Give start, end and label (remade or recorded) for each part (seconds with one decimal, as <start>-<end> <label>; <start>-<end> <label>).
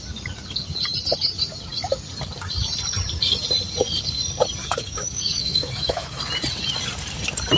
0.0-4.6 recorded; 4.6-6.2 remade; 6.2-7.6 recorded